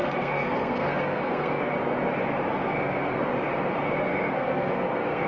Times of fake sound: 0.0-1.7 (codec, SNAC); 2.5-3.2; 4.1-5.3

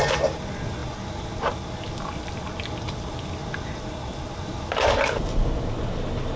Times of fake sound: none